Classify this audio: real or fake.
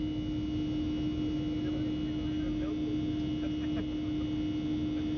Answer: real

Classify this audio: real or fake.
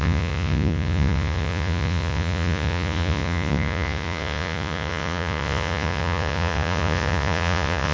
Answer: fake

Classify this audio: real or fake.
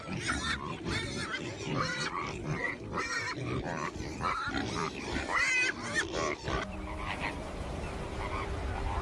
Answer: fake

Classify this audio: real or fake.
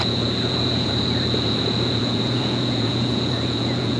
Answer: fake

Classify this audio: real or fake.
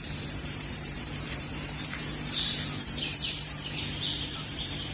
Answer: fake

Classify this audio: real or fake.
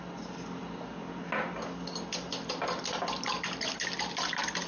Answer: real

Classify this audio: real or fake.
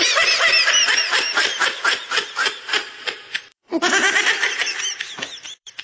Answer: fake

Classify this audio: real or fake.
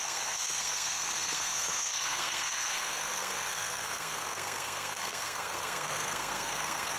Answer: fake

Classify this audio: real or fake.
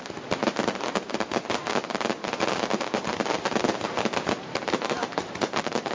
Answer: real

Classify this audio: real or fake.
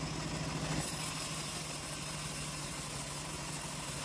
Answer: real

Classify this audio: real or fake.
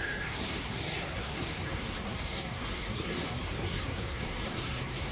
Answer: fake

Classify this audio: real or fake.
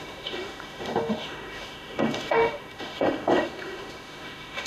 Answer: fake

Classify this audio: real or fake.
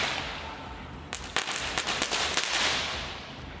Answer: real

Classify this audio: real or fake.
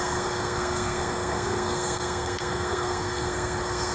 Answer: fake